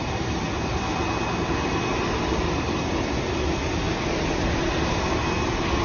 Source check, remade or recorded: recorded